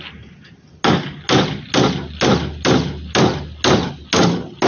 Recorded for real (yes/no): yes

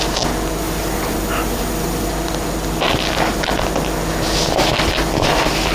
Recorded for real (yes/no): yes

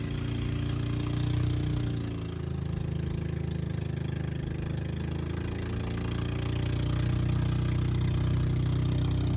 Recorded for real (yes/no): yes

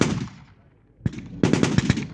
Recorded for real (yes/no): yes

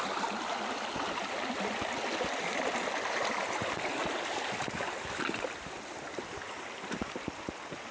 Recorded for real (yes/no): yes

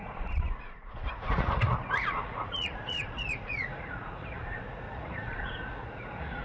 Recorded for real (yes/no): no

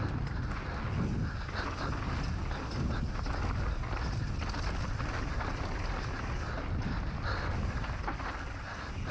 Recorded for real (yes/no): yes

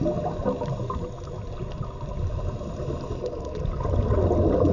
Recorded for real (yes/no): yes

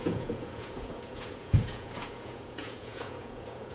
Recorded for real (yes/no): no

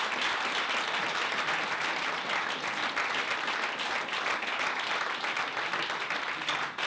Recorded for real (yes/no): no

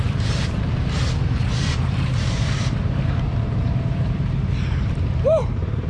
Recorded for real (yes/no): no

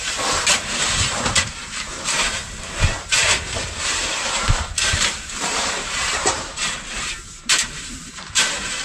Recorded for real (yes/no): no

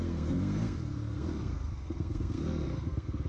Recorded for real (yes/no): no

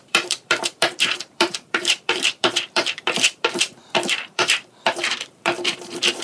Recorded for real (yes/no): no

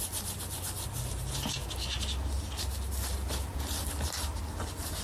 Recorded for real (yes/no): yes